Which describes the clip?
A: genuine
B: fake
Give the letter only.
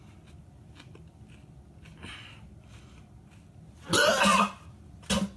A